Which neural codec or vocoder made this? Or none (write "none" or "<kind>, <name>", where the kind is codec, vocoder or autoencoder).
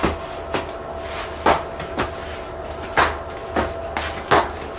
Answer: none